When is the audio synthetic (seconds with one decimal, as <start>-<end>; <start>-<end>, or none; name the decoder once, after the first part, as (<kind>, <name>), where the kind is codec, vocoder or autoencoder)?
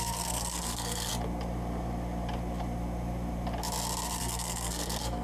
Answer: 0.0-1.1 (codec, SNAC); 4.2-5.2